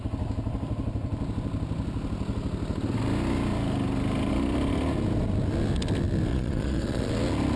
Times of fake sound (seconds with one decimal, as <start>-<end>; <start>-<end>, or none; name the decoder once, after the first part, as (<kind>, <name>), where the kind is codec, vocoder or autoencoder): 6.3-7.1 (vocoder, Vocos)